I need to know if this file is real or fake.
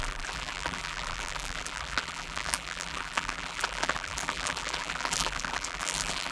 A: fake